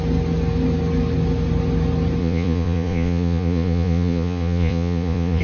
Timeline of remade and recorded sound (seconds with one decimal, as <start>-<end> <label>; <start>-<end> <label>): 0.0-2.2 recorded; 2.2-5.4 remade